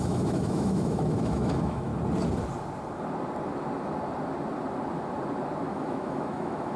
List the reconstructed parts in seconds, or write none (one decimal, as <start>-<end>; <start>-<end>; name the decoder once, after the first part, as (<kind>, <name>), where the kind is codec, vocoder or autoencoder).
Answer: 0.0-1.9 (autoencoder, DAC-VAE); 5.7-6.8